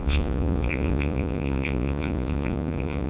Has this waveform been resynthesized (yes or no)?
yes